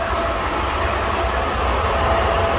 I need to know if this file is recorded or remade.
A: recorded